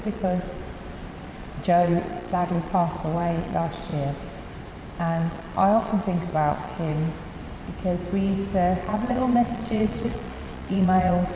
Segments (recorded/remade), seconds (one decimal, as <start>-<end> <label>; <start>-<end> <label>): 0.0-0.6 remade; 0.6-1.4 recorded; 1.4-3.9 remade; 3.9-5.0 recorded; 5.0-6.9 remade; 6.9-8.8 recorded; 8.8-11.4 remade